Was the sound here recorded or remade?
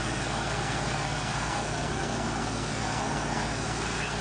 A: remade